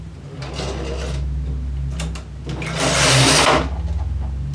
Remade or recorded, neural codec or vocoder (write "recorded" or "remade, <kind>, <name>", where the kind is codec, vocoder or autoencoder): recorded